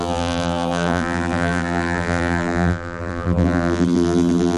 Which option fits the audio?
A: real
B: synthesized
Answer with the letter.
B